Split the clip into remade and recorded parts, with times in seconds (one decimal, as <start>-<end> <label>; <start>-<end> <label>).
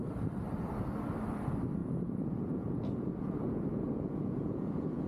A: 0.0-1.8 recorded; 1.8-5.1 remade